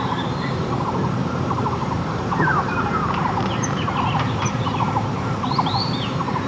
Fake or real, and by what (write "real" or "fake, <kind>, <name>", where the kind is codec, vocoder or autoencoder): fake, vocoder, BigVGAN v2